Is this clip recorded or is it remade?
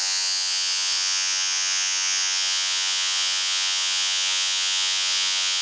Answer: remade